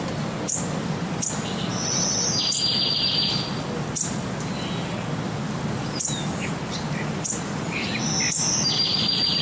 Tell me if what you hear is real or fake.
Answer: real